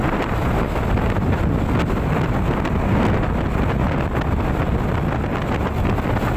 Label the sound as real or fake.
real